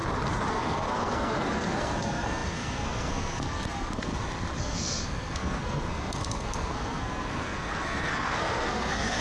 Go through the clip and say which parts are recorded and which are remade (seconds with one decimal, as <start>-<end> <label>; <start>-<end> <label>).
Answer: 0.0-0.5 recorded; 0.5-4.1 remade; 4.1-4.6 recorded; 4.6-9.2 remade